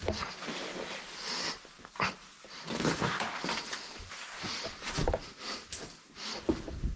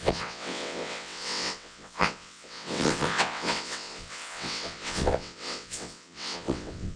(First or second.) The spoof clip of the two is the second